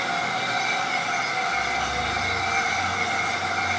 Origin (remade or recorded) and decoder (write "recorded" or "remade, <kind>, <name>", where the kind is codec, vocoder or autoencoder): recorded